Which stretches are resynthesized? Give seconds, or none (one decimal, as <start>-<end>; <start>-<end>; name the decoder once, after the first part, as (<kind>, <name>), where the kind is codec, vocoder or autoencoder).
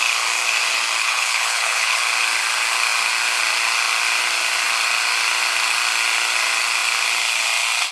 1.0-2.0 (codec, HILCodec)